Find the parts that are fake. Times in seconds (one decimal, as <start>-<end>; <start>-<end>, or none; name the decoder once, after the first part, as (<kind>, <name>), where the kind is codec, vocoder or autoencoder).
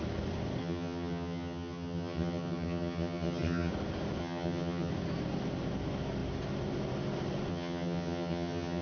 0.6-3.7 (vocoder, HiFi-GAN); 4.2-4.9; 7.5-8.8